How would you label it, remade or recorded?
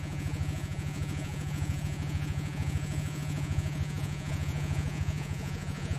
remade